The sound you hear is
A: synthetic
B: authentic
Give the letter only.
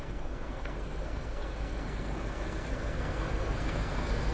A